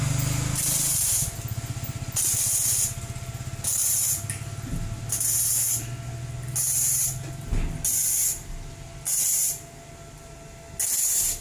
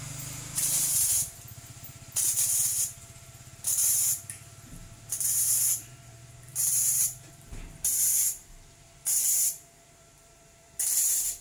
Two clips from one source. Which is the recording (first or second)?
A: first